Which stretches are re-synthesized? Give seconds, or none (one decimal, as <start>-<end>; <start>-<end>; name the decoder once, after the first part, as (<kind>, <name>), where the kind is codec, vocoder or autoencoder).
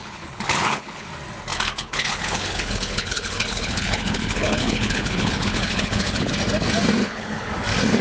0.0-1.1 (codec, HILCodec); 1.5-6.3; 7.0-7.5